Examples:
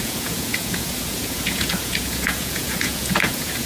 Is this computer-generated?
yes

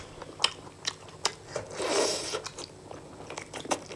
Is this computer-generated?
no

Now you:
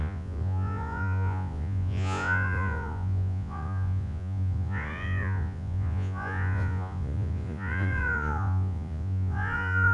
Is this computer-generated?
yes